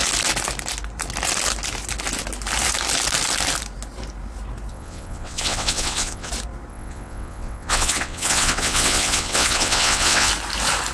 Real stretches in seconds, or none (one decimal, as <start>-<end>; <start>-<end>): 0.0-4.7; 6.3-6.7; 10.3-10.9